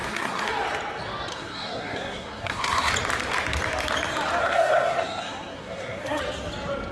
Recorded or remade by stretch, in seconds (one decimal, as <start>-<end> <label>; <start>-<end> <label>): 0.0-0.5 remade; 0.5-1.3 recorded; 1.3-2.9 remade; 2.9-4.4 recorded; 4.4-6.2 remade; 6.2-6.9 recorded